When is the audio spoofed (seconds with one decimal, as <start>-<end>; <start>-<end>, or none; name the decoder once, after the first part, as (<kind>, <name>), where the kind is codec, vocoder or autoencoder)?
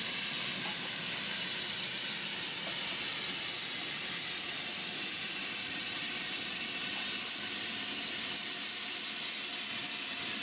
5.4-6.4 (vocoder, BigVGAN v2)